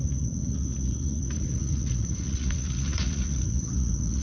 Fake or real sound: fake